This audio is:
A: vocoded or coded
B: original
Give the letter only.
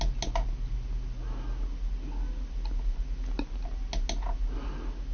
B